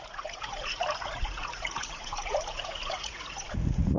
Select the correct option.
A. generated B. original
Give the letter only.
A